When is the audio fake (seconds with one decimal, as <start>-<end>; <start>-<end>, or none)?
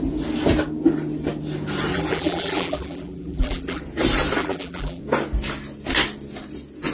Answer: 1.9-3.8; 4.4-5.0